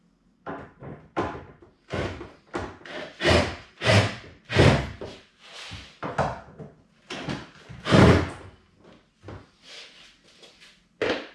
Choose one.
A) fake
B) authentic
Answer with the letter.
B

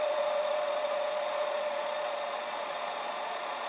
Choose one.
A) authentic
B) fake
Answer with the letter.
B